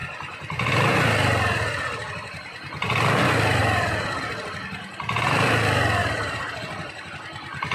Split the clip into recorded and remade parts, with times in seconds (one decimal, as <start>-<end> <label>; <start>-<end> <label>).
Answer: 0.0-3.6 recorded; 3.6-4.2 remade; 4.2-6.0 recorded; 6.0-7.1 remade; 7.1-7.7 recorded